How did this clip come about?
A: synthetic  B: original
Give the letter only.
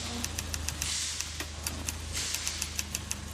B